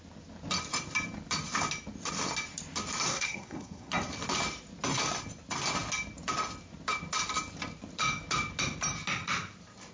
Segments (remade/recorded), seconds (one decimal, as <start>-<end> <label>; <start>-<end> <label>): 0.0-3.1 recorded; 3.1-3.9 remade; 3.9-9.9 recorded